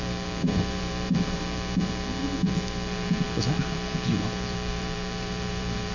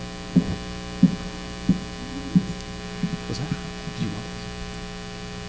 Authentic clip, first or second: second